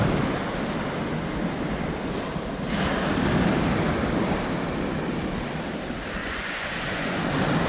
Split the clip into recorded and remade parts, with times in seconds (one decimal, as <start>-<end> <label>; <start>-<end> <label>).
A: 0.0-6.2 recorded; 6.2-7.2 remade; 7.2-7.7 recorded